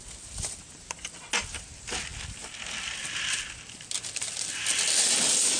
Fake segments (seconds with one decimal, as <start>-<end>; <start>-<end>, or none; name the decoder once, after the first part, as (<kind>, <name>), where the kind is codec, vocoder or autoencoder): none